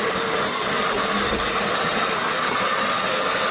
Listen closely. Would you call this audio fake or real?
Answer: real